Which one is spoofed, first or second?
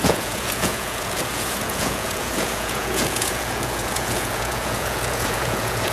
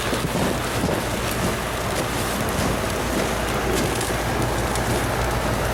first